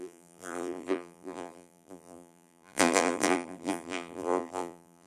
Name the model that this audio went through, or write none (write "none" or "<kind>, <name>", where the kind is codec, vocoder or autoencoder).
vocoder, BigVGAN v2